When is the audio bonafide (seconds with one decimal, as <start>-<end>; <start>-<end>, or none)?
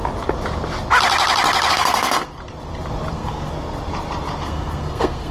0.0-1.7; 2.4-3.1; 3.5-4.4